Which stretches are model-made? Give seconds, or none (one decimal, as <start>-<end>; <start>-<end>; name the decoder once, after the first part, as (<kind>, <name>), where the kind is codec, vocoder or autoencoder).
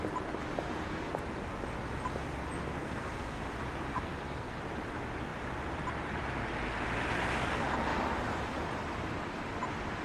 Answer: 2.8-3.4 (codec, SNAC); 3.9-4.6